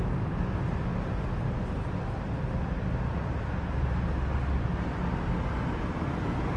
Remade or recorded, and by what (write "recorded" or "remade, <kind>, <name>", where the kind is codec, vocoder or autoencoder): recorded